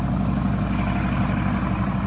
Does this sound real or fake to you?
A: real